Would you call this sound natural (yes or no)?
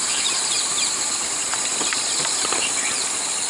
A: yes